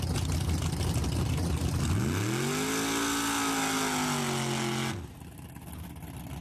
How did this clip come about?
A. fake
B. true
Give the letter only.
B